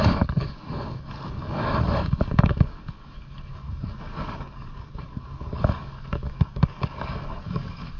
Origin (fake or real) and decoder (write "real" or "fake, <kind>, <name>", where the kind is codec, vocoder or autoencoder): fake, codec, DAC